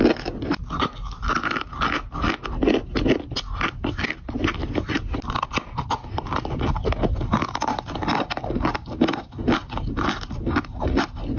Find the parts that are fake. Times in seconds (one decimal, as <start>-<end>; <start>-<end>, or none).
none